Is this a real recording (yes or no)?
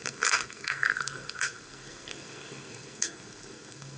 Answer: no